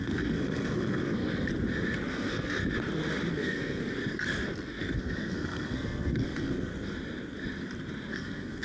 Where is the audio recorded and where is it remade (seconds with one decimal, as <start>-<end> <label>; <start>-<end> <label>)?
0.0-1.5 remade; 1.5-2.1 recorded; 2.1-2.6 remade; 2.6-3.3 recorded; 3.3-3.8 remade; 3.8-4.8 recorded; 4.8-6.7 remade; 6.7-8.1 recorded; 8.1-8.6 remade